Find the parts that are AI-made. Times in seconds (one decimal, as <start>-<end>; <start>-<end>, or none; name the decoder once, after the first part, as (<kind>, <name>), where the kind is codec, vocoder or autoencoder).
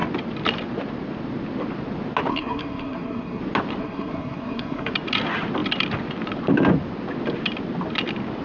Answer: 2.3-3.4 (codec, SNAC); 3.8-4.9